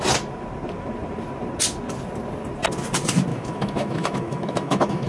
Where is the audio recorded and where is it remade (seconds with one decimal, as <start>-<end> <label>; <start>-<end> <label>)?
0.0-3.3 recorded; 3.3-5.1 remade